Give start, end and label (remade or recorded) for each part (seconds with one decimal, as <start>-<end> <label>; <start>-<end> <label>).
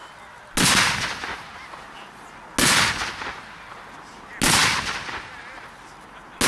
0.0-6.5 recorded